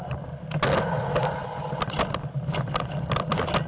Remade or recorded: recorded